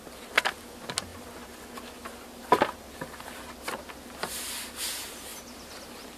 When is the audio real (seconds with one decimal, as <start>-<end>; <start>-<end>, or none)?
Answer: 0.0-6.2